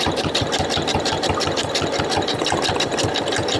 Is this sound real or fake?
real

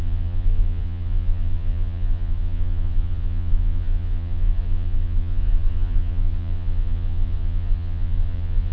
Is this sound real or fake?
fake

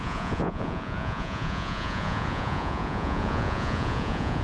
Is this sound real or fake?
fake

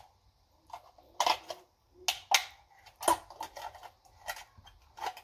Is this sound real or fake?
real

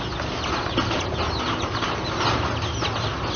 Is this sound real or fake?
real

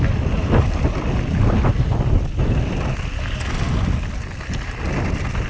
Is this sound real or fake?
real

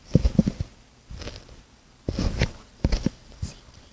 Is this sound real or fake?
real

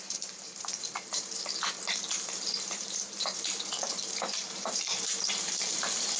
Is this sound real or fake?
fake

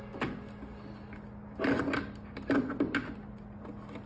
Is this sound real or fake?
real